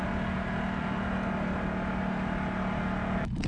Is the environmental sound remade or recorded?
recorded